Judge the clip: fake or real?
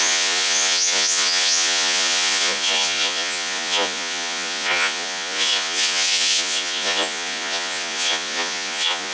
fake